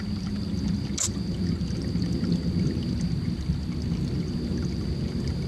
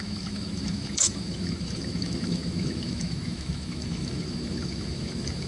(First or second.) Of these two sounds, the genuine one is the first